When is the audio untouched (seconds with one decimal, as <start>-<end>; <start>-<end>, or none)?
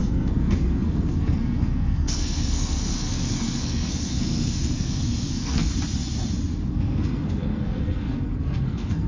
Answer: 5.7-6.7